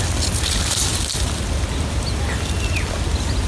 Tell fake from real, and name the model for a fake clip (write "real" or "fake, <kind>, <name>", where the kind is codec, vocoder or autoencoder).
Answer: real